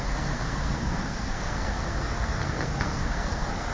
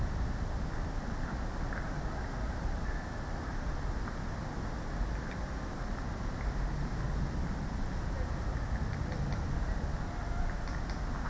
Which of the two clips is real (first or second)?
second